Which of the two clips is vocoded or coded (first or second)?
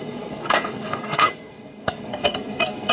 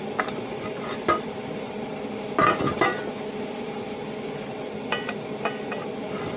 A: first